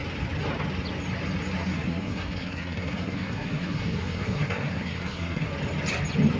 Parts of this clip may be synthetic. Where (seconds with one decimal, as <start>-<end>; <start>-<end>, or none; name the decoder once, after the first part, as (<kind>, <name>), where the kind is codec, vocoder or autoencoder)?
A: 1.7-5.5 (codec, SNAC)